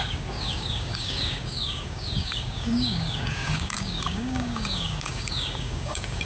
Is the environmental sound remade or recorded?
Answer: remade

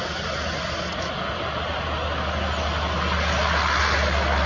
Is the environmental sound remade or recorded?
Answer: recorded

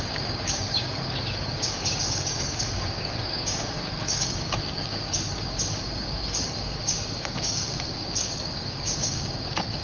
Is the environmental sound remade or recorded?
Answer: remade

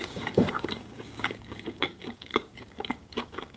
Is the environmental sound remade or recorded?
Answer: remade